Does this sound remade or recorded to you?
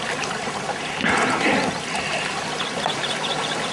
remade